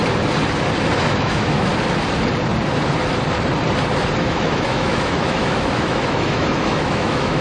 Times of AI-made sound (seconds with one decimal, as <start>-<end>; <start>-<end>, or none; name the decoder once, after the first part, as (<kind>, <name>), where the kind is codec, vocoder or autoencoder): 1.0-1.7 (autoencoder, DAC-VAE); 4.2-7.4